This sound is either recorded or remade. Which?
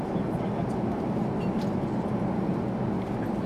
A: recorded